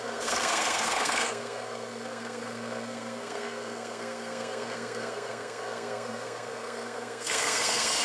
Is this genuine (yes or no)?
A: no